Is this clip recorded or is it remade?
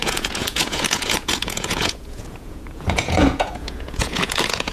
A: remade